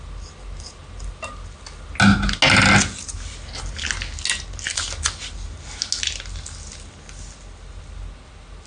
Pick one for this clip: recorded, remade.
recorded